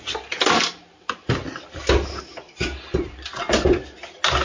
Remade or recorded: recorded